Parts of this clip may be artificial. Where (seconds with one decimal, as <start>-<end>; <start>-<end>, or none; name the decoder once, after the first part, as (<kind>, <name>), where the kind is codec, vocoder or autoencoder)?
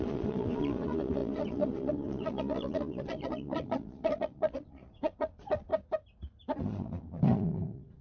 0.0-5.7 (vocoder, Vocos); 6.6-8.0